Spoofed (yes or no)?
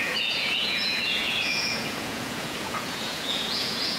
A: yes